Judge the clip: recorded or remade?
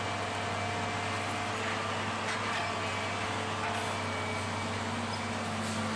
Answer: recorded